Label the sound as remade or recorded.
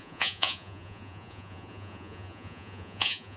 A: remade